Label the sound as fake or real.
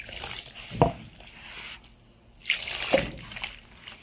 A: real